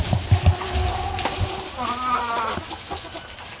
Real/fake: real